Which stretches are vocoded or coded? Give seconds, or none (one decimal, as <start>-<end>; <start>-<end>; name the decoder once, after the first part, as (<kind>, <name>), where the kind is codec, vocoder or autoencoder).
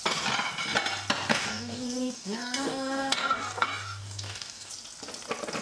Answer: 1.3-4.7 (codec, DAC)